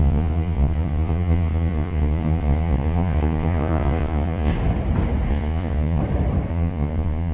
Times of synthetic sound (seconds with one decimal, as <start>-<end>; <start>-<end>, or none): 0.0-4.5; 5.3-6.0; 6.5-7.3